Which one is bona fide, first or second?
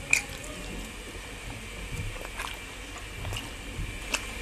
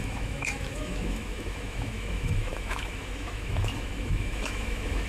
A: first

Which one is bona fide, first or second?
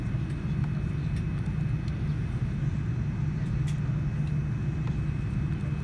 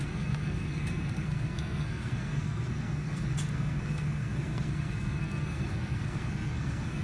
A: first